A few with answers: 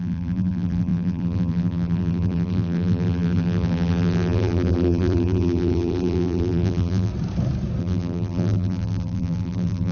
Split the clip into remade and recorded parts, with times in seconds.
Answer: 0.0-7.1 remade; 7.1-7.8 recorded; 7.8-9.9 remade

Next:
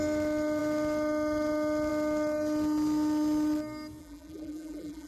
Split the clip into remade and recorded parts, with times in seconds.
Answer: 0.0-4.0 recorded; 4.0-5.1 remade

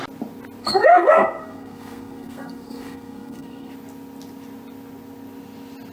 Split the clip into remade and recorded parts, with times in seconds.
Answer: 0.0-0.6 recorded; 0.6-3.7 remade; 3.7-5.9 recorded

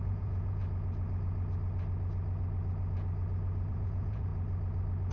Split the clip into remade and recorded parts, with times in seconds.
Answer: 0.0-0.6 remade; 0.6-3.7 recorded; 3.7-4.3 remade; 4.3-5.1 recorded

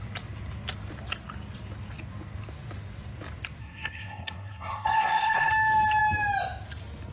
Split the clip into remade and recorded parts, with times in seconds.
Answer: 0.0-3.6 recorded; 3.6-5.5 remade; 5.5-7.1 recorded